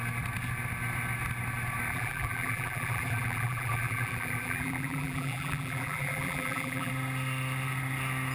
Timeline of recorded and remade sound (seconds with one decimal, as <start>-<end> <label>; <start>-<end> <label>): 0.0-1.9 recorded; 1.9-6.9 remade; 6.9-8.3 recorded